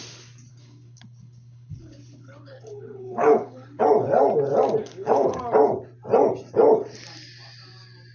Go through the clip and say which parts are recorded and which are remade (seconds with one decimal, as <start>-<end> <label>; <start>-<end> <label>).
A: 0.0-0.5 recorded; 0.5-3.8 remade; 3.8-4.8 recorded; 4.8-5.4 remade; 5.4-8.1 recorded

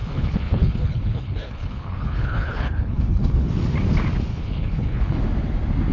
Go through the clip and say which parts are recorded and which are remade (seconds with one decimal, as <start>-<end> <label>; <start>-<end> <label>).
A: 0.0-3.5 remade; 3.5-4.3 recorded; 4.3-5.2 remade; 5.2-5.9 recorded

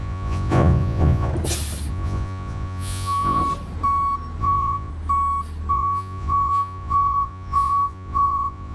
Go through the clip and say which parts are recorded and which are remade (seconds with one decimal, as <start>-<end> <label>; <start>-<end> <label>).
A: 0.0-1.3 remade; 1.3-1.9 recorded; 1.9-3.4 remade; 3.4-4.4 recorded; 4.4-4.9 remade; 4.9-5.7 recorded; 5.7-8.7 remade

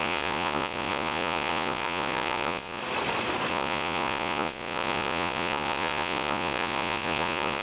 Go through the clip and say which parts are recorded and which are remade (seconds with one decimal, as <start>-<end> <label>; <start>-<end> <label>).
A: 0.0-2.8 remade; 2.8-3.5 recorded; 3.5-7.6 remade

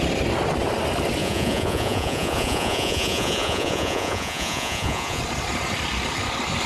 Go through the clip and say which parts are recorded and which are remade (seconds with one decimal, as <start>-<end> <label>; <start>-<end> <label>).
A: 0.0-1.2 recorded; 1.2-5.2 remade; 5.2-6.7 recorded

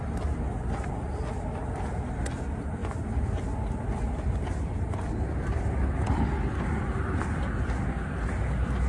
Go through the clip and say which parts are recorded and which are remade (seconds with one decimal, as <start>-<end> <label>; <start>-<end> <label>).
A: 0.0-8.9 recorded